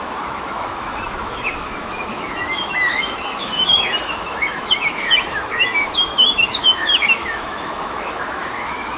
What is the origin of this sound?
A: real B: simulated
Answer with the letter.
B